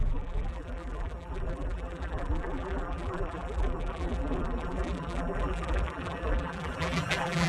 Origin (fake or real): fake